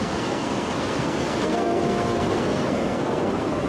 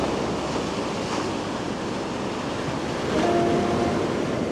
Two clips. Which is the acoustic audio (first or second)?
second